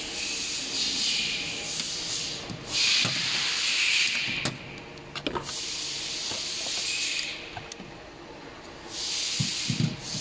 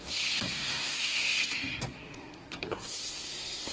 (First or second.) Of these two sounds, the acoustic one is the first